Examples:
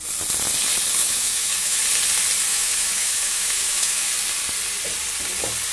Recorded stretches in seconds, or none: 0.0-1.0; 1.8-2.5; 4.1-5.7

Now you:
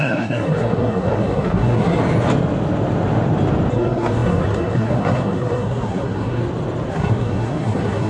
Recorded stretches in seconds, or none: 2.0-3.7; 6.4-6.9

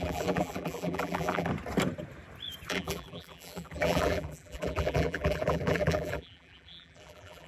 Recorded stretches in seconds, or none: 1.5-2.7

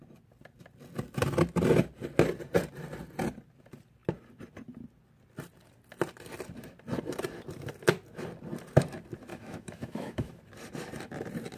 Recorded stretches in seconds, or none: 0.0-9.3; 10.4-11.6

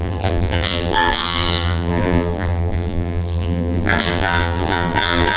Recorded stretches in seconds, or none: none

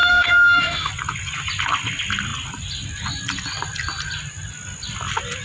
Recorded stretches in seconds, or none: 0.9-5.4

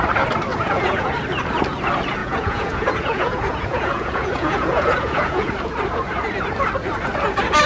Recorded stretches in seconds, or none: 0.0-0.5; 1.1-2.2; 5.5-7.7

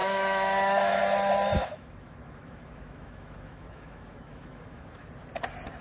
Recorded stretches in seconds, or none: 1.0-1.6; 5.1-5.8